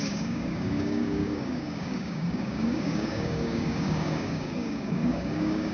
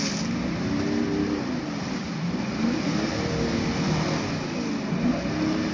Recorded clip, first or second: second